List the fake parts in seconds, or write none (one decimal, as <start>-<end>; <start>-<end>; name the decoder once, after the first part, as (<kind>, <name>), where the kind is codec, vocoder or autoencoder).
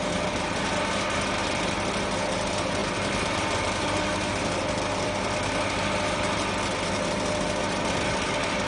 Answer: 2.8-5.4 (vocoder, BigVGAN v2)